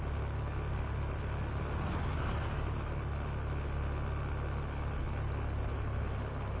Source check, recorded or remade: recorded